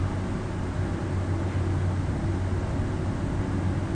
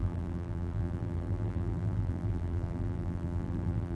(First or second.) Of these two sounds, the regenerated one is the second